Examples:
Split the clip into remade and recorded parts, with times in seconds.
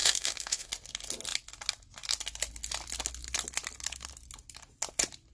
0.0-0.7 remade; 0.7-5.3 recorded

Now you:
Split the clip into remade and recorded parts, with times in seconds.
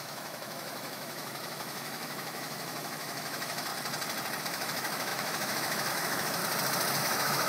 0.0-3.7 remade; 3.7-4.4 recorded; 4.4-6.4 remade; 6.4-7.0 recorded; 7.0-7.5 remade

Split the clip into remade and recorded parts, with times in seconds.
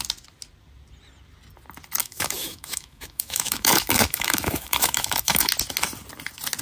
0.0-2.0 recorded; 2.0-5.5 remade; 5.5-6.6 recorded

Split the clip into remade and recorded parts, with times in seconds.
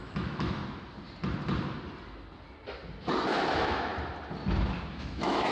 0.0-0.6 remade; 0.6-3.2 recorded; 3.2-3.9 remade; 3.9-4.9 recorded; 4.9-5.5 remade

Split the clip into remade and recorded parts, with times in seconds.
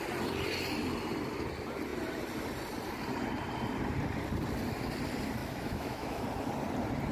0.0-5.4 recorded; 5.4-6.2 remade; 6.2-7.1 recorded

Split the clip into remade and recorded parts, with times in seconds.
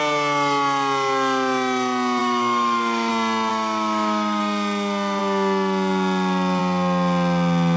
0.0-2.2 recorded; 2.2-3.1 remade; 3.1-3.5 recorded; 3.5-4.4 remade; 4.4-7.8 recorded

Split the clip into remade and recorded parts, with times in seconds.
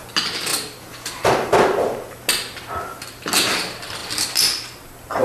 0.0-5.2 recorded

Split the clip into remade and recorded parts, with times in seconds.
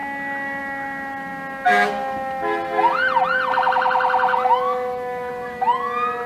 0.0-4.3 recorded; 4.3-5.3 remade; 5.3-6.3 recorded